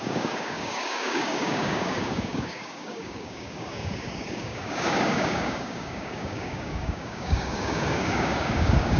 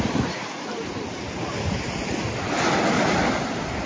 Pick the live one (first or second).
second